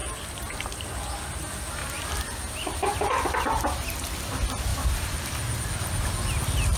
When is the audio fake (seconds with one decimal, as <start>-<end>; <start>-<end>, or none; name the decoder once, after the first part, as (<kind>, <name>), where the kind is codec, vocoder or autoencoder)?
none